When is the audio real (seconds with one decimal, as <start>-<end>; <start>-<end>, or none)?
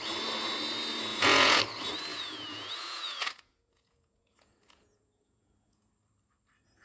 0.0-1.1; 1.6-2.1; 5.9-6.8